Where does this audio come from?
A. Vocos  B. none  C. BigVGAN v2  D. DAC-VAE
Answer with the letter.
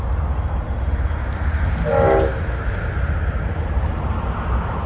B